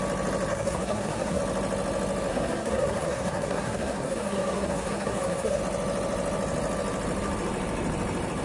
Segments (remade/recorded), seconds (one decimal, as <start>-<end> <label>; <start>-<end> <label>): 0.0-0.5 recorded; 0.5-1.4 remade; 1.4-2.3 recorded; 2.3-5.6 remade; 5.6-8.4 recorded